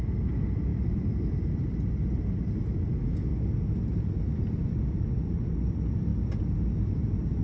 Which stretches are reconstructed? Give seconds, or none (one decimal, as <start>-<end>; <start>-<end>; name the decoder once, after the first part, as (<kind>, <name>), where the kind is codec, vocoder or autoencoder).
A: 0.7-1.9 (vocoder, BigVGAN v2); 3.3-4.8